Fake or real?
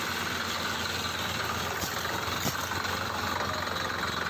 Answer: real